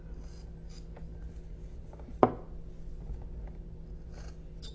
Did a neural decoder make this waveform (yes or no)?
no